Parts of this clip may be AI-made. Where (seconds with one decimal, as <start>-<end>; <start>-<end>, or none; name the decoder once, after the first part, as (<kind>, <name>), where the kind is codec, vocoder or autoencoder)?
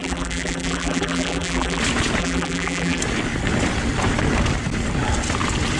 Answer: 0.0-1.8 (vocoder, BigVGAN v2); 2.2-3.0